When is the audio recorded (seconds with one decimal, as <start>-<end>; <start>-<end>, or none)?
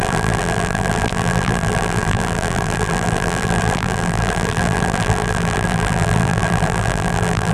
none